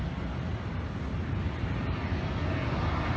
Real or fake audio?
real